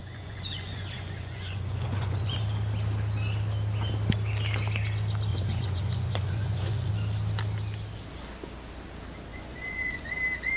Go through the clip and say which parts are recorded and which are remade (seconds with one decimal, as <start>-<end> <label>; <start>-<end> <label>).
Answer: 0.0-2.4 remade; 2.4-5.3 recorded; 5.3-6.9 remade; 6.9-9.3 recorded; 9.3-10.1 remade; 10.1-10.6 recorded